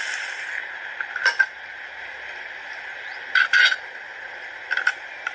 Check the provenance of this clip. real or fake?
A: real